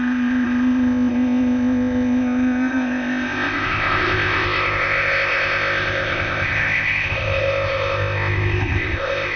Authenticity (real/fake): fake